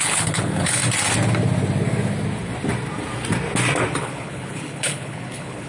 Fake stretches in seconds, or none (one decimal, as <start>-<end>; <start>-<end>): 0.0-0.8; 4.0-5.7